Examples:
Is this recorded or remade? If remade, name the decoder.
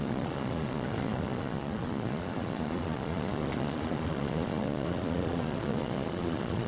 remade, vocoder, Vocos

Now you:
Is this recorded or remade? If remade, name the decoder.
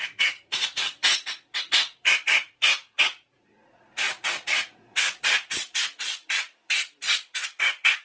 remade, vocoder, Vocos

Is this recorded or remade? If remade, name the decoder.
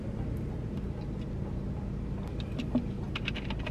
remade, vocoder, BigVGAN v2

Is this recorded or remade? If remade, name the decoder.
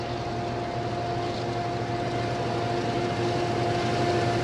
recorded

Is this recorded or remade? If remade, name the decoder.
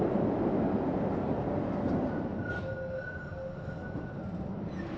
recorded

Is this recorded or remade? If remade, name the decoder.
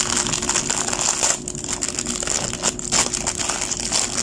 recorded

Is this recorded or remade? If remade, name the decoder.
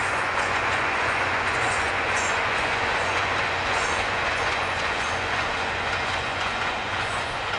remade, vocoder, Vocos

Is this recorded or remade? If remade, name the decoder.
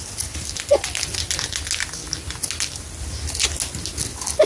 recorded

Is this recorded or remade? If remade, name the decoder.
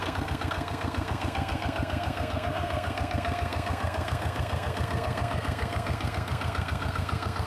remade, codec, SNAC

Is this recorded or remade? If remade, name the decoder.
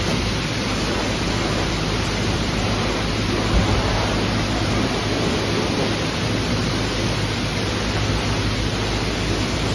recorded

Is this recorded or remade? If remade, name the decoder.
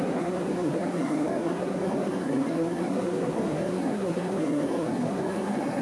remade, codec, SNAC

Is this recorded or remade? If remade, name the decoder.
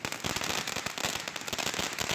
recorded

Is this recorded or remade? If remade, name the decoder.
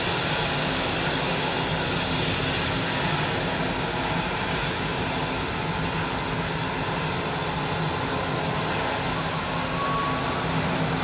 recorded